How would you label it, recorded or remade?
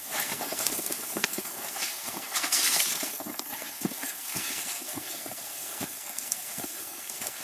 remade